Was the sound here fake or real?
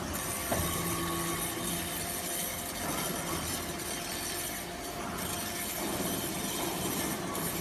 real